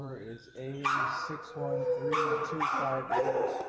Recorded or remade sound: remade